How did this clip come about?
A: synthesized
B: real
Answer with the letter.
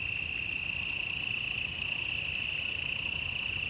B